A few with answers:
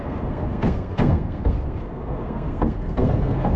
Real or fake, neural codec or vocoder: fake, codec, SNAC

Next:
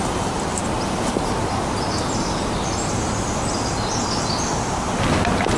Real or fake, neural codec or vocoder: real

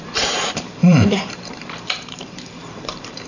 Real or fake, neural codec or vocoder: fake, vocoder, BigVGAN v2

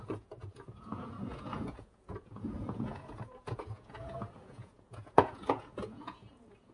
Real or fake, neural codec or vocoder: fake, vocoder, Vocos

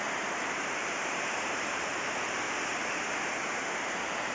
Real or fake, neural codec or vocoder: fake, vocoder, BigVGAN v2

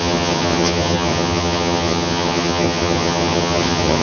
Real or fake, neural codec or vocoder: fake, vocoder, HiFi-GAN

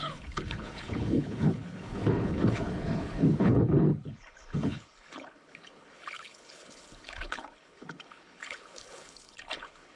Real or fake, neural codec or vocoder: fake, codec, HILCodec